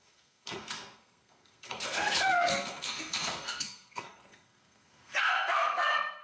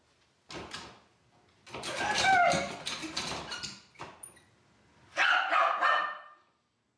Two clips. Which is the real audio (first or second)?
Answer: second